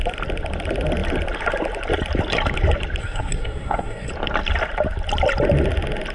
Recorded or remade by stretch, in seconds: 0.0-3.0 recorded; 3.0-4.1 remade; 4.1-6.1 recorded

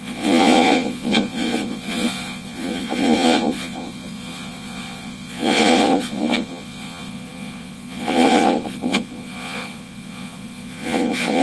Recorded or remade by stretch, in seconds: 0.0-11.4 remade

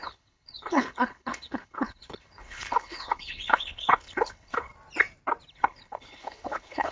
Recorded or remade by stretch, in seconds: 0.0-4.7 remade; 4.7-5.5 recorded; 5.5-6.9 remade

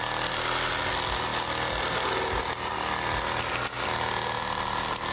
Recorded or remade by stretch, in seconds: 0.0-5.1 recorded

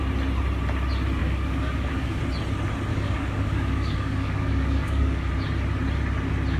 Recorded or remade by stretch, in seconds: 0.0-1.2 recorded; 1.2-2.2 remade; 2.2-2.9 recorded; 2.9-5.3 remade; 5.3-6.6 recorded